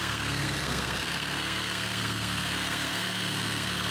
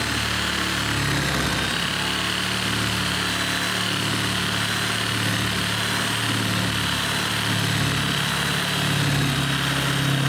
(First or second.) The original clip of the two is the second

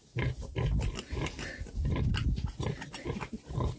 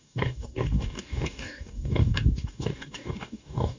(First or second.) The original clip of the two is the first